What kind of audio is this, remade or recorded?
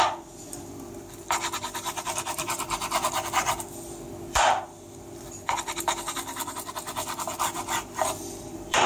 remade